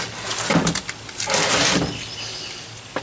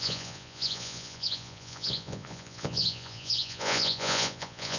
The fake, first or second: second